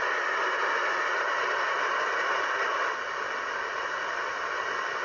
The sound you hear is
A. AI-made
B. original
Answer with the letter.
B